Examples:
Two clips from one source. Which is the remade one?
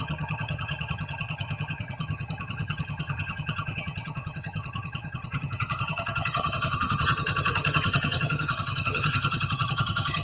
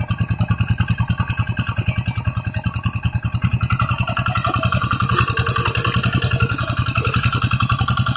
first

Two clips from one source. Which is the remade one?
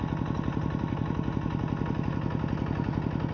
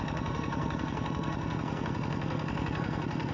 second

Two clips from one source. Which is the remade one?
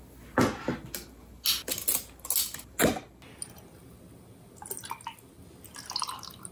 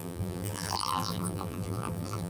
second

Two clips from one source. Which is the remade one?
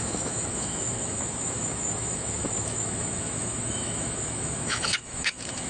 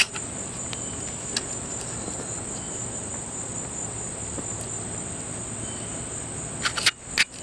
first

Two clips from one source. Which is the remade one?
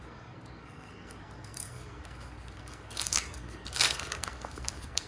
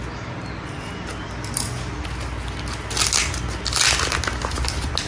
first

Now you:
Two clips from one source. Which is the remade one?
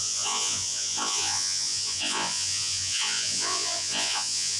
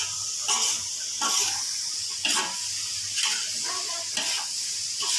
first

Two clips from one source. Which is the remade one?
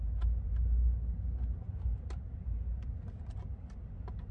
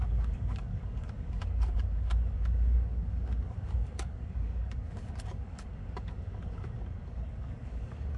second